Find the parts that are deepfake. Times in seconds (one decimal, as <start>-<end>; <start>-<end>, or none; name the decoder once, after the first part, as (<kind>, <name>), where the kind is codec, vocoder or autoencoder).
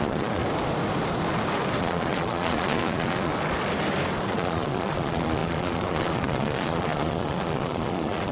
0.0-0.4 (vocoder, Vocos); 1.8-3.3; 4.3-8.3